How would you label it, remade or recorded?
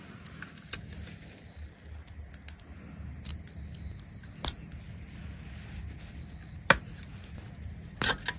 recorded